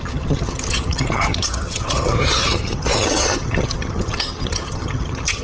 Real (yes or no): no